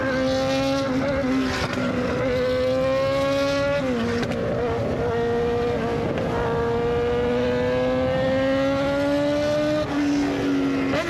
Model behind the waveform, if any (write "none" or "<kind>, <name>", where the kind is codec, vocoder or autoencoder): none